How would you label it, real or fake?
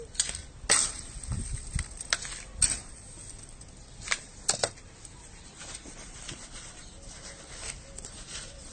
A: real